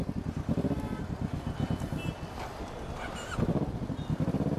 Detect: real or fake real